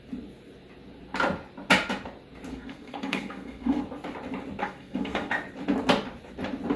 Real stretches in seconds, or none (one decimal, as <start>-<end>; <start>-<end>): 0.0-2.5; 3.8-4.6; 5.3-6.8